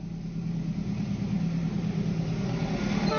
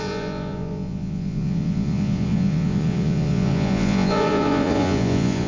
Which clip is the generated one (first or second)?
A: second